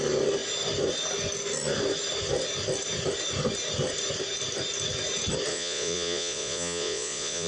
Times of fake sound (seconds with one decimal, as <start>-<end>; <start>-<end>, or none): 5.5-7.5